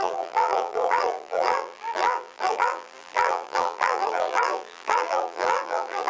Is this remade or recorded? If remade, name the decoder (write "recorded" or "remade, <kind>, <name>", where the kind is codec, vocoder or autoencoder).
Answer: remade, vocoder, BigVGAN v2